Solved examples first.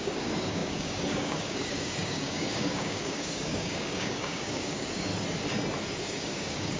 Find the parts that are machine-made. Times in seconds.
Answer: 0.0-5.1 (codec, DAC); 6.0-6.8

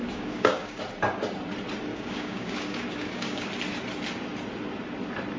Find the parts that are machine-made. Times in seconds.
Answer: 0.0-0.8 (codec, DAC); 1.9-3.5

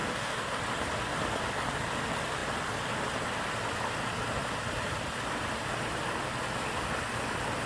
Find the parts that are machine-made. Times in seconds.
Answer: 0.0-0.6 (codec, DAC)

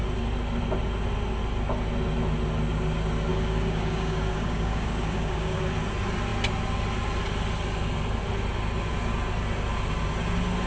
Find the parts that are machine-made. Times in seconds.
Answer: 3.3-5.6 (codec, DAC)

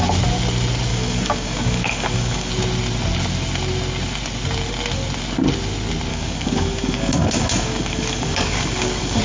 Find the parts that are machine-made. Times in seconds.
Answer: 0.9-2.5 (codec, DAC); 6.1-9.2

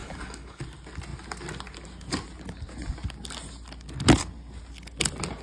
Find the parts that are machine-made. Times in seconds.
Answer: 0.0-0.6 (codec, DAC)